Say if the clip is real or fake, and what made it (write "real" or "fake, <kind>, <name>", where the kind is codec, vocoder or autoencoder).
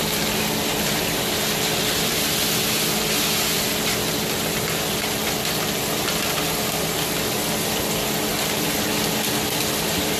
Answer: real